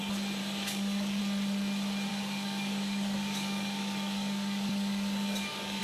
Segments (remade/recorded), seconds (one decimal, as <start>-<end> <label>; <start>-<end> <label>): 0.0-0.4 recorded; 0.4-1.2 remade; 1.2-2.1 recorded; 2.1-5.8 remade